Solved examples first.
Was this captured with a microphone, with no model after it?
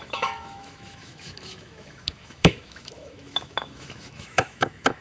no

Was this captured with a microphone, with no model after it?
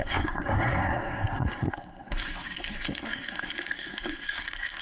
no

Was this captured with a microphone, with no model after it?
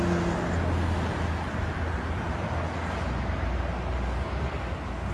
yes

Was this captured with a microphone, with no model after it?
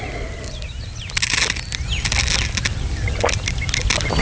yes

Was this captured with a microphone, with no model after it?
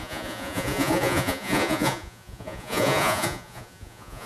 no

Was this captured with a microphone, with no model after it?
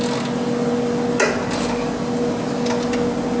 yes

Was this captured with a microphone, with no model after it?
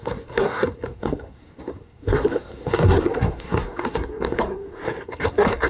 no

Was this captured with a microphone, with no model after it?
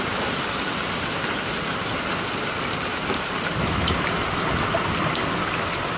yes